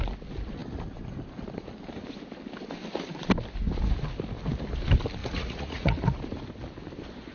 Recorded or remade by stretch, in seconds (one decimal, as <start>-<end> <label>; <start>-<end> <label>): 0.0-5.2 recorded; 5.2-6.2 remade; 6.2-7.3 recorded